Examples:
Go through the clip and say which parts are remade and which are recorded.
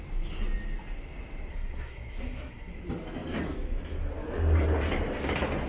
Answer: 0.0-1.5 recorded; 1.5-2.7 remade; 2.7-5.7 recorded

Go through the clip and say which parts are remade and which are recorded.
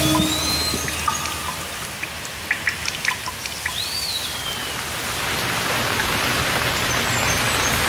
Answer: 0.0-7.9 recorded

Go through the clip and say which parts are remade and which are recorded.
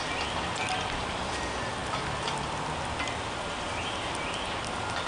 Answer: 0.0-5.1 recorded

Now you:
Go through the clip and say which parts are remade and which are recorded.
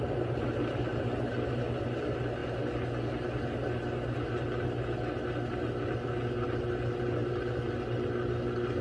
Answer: 0.0-8.8 recorded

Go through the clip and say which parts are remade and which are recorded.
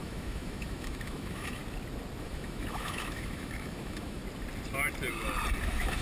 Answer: 0.0-1.6 remade; 1.6-2.2 recorded; 2.2-4.2 remade; 4.2-5.6 recorded; 5.6-6.0 remade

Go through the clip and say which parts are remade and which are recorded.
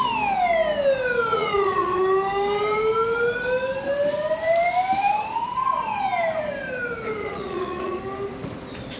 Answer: 0.0-1.3 recorded; 1.3-2.0 remade; 2.0-7.2 recorded; 7.2-8.0 remade; 8.0-9.0 recorded